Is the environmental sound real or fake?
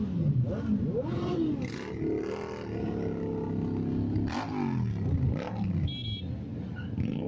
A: real